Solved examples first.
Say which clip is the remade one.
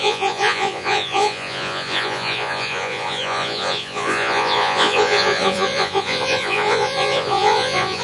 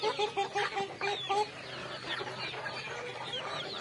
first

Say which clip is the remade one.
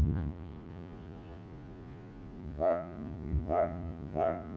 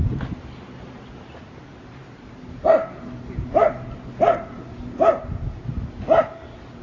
first